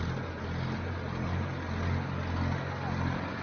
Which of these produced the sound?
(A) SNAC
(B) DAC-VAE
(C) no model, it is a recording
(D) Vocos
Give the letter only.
C